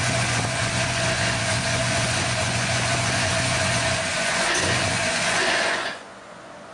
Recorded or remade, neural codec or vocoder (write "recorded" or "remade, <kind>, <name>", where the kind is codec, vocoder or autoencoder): remade, vocoder, Vocos